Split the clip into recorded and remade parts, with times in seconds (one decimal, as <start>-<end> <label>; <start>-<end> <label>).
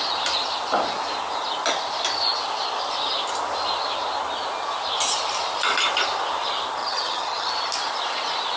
0.0-6.8 recorded; 6.8-7.5 remade; 7.5-8.6 recorded